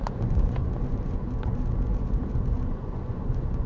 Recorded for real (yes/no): no